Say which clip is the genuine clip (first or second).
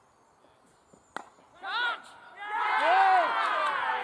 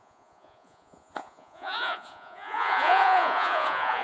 first